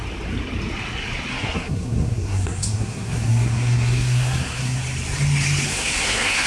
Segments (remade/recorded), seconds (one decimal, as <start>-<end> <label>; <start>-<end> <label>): 0.0-1.3 recorded; 1.3-4.8 remade; 4.8-5.7 recorded; 5.7-6.5 remade